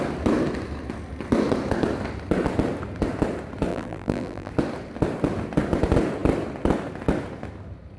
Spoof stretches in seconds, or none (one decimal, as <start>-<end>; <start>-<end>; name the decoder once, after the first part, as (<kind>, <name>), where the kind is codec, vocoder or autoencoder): 3.7-4.5 (vocoder, BigVGAN v2)